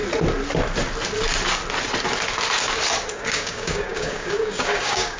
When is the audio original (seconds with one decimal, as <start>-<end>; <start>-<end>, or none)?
0.0-3.1